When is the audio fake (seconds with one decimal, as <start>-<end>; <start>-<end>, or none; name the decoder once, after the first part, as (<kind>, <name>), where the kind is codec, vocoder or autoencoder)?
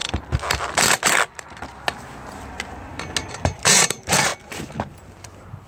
3.3-4.3 (vocoder, BigVGAN v2); 4.9-5.7